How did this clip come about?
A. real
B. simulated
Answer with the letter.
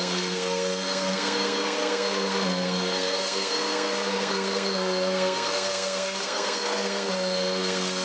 B